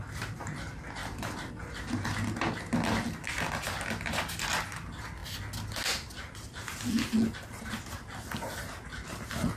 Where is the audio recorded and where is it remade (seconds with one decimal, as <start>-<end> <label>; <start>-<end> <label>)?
0.0-1.0 recorded; 1.0-1.5 remade; 1.5-9.6 recorded